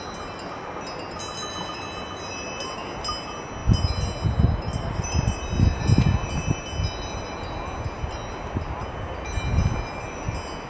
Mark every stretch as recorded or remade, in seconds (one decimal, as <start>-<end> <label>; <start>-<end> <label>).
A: 0.0-10.7 recorded